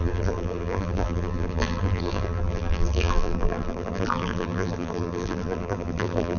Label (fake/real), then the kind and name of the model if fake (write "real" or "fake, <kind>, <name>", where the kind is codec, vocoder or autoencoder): fake, vocoder, BigVGAN v2